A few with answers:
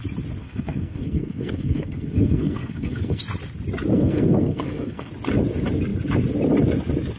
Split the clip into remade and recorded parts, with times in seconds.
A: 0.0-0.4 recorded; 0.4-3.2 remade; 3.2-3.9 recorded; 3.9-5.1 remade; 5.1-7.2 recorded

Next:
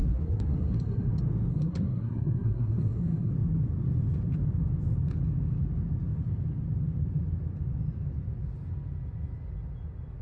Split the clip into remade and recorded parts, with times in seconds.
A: 0.0-1.1 remade; 1.1-1.5 recorded; 1.5-3.3 remade; 3.3-10.2 recorded

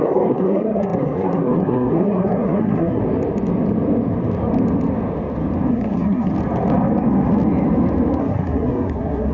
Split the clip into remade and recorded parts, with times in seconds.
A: 0.0-3.0 remade; 3.0-5.7 recorded; 5.7-6.3 remade; 6.3-8.2 recorded; 8.2-9.3 remade

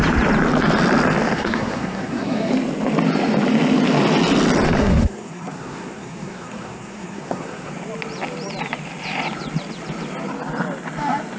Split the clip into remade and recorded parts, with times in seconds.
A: 0.0-1.3 recorded; 1.3-2.5 remade; 2.5-4.8 recorded; 4.8-7.7 remade; 7.7-11.4 recorded

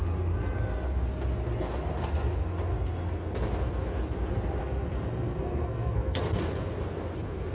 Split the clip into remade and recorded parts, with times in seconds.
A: 0.0-4.6 recorded; 4.6-6.2 remade; 6.2-7.5 recorded